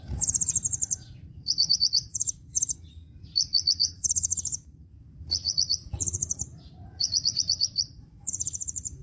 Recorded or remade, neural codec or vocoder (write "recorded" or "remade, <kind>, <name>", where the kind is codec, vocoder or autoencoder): remade, vocoder, Vocos